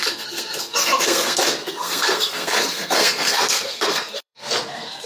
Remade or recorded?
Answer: remade